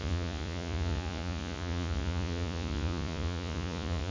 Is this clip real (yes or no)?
no